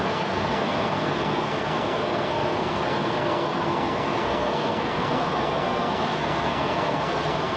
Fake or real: fake